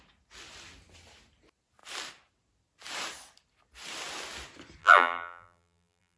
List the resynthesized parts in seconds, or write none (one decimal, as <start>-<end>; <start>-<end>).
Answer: 4.8-6.2